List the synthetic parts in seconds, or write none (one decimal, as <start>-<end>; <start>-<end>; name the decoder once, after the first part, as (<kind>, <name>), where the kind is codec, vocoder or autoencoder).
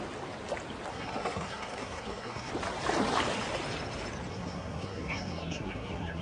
0.9-2.5 (codec, SNAC); 4.3-6.2